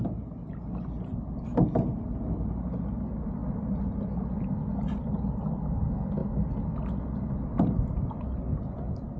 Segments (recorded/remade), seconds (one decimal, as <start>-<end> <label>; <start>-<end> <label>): 0.0-9.2 recorded